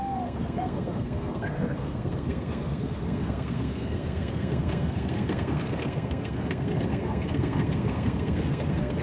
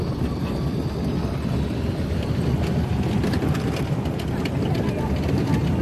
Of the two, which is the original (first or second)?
second